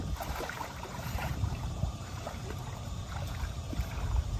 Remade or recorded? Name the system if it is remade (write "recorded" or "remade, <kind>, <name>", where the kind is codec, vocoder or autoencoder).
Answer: remade, vocoder, BigVGAN v2